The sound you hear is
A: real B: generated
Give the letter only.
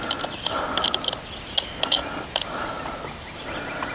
A